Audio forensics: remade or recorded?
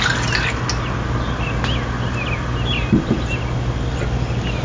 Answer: recorded